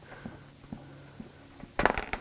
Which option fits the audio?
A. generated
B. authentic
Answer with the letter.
B